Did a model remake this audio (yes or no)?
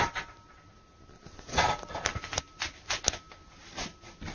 no